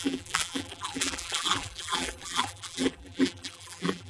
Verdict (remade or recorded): remade